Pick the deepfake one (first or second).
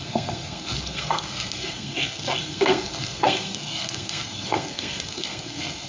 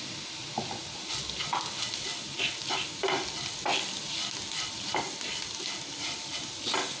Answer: first